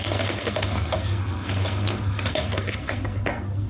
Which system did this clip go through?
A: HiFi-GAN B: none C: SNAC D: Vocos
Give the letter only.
C